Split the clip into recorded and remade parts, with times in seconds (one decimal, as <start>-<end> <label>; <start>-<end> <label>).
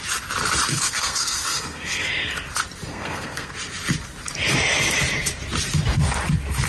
0.0-0.7 recorded; 0.7-2.1 remade; 2.1-2.9 recorded; 2.9-3.5 remade; 3.5-6.7 recorded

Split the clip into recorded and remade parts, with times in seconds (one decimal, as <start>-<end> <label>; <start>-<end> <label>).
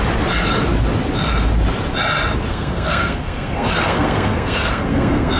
0.0-2.5 recorded; 2.5-5.4 remade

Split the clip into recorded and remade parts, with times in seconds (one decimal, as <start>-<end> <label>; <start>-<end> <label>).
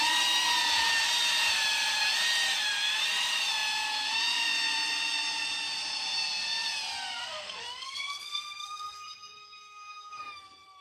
0.0-7.2 recorded; 7.2-10.2 remade; 10.2-10.8 recorded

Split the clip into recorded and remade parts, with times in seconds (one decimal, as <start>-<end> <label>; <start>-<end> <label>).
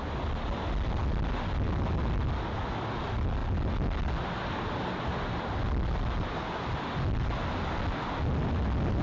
0.0-9.0 recorded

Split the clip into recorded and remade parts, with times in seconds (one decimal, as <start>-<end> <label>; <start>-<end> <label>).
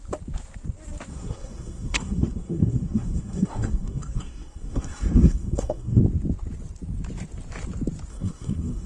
0.0-1.1 recorded; 1.1-6.0 remade; 6.0-8.1 recorded; 8.1-8.9 remade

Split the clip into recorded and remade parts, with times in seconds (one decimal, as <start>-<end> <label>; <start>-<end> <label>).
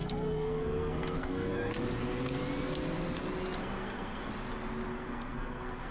0.0-1.7 remade; 1.7-3.6 recorded; 3.6-4.3 remade; 4.3-4.9 recorded; 4.9-5.9 remade